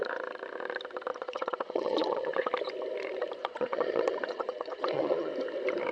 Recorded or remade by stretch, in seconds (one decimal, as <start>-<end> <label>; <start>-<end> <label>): 0.0-1.1 recorded; 1.1-2.5 remade; 2.5-3.4 recorded; 3.4-5.3 remade; 5.3-5.9 recorded